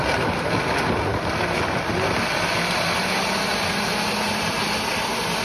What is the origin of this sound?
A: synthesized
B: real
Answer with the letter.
B